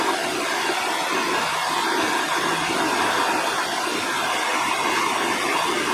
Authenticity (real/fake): real